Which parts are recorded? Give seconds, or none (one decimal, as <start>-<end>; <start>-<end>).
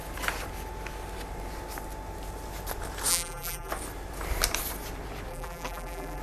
0.0-3.1; 3.7-5.3